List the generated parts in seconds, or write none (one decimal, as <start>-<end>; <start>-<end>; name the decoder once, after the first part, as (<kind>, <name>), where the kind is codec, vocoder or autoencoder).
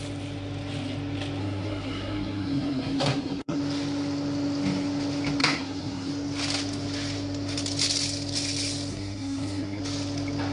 1.4-3.6 (codec, SNAC); 5.4-6.1; 8.9-9.8